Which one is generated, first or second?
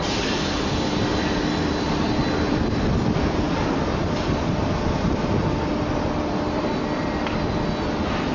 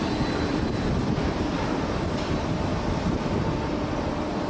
second